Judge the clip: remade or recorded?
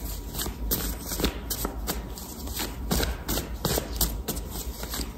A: recorded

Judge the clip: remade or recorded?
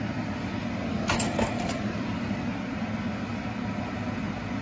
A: recorded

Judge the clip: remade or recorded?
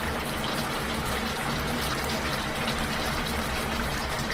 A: remade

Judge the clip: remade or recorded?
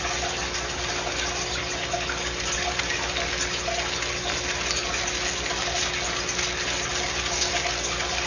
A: recorded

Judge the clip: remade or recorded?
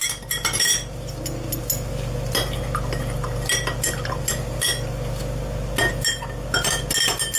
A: recorded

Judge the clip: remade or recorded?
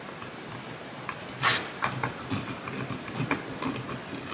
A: recorded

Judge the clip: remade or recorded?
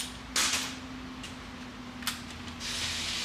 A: recorded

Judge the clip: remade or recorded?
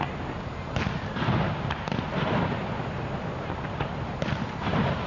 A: recorded